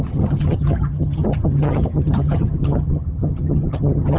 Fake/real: fake